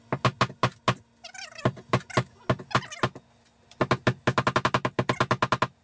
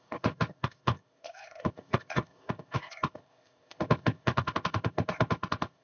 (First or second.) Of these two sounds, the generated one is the second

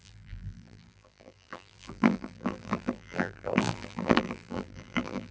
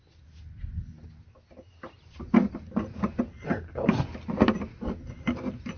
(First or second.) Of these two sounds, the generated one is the first